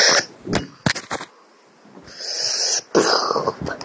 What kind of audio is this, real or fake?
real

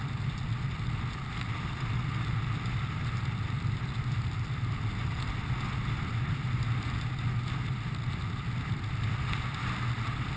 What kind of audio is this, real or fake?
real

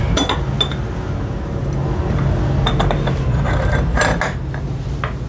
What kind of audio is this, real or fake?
real